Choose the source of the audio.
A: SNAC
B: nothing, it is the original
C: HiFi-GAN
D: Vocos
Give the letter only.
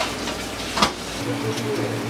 B